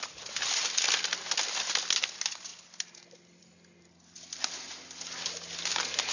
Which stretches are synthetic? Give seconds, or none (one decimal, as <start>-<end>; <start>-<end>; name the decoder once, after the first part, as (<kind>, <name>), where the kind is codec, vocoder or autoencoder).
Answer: none